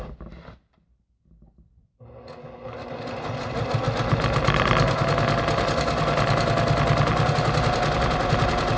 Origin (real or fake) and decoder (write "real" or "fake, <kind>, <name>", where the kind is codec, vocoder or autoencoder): real